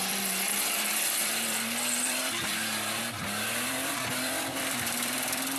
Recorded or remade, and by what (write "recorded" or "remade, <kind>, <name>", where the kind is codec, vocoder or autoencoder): remade, vocoder, BigVGAN v2